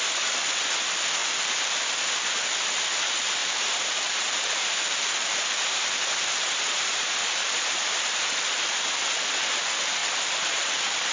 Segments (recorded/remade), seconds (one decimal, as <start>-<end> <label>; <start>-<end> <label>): 0.0-1.2 recorded; 1.2-2.5 remade; 2.5-3.4 recorded; 3.4-8.6 remade; 8.6-10.0 recorded; 10.0-11.1 remade